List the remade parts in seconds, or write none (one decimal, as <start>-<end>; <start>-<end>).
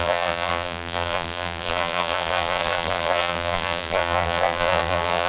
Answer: 0.0-5.3